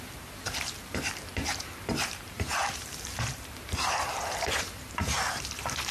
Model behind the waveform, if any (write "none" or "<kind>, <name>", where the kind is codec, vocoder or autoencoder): vocoder, BigVGAN v2